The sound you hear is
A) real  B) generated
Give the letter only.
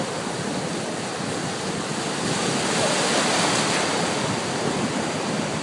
A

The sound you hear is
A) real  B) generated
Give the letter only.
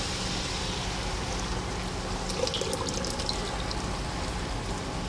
A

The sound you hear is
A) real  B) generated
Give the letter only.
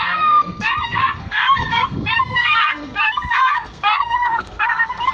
B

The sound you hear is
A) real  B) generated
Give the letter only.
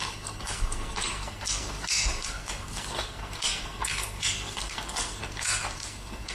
B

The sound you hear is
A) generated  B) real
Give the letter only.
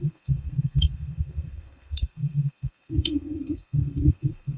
A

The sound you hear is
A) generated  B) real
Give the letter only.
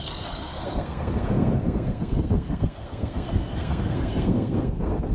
A